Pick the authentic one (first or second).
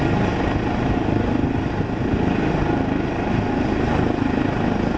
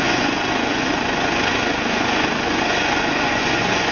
first